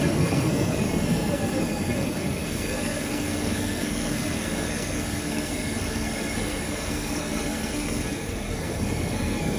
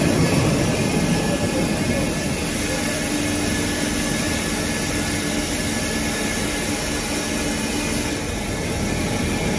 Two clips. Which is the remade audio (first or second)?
first